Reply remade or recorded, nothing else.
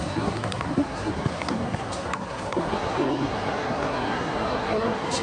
remade